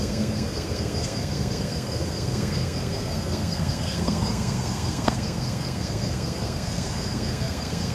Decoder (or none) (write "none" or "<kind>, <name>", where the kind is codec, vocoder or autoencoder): codec, SNAC